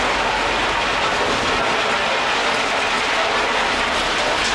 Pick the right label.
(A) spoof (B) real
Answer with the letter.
B